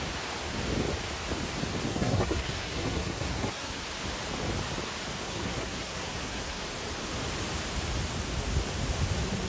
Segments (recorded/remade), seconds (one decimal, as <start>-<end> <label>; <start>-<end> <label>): 0.0-1.9 recorded; 1.9-3.8 remade; 3.8-5.3 recorded; 5.3-6.6 remade; 6.6-9.5 recorded